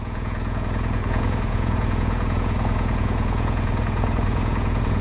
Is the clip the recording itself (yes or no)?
no